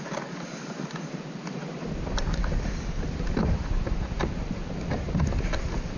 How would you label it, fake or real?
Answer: real